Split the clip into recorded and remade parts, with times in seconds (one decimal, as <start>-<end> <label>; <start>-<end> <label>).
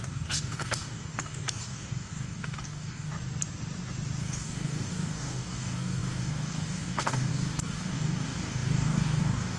0.0-3.1 remade; 3.1-4.2 recorded; 4.2-9.6 remade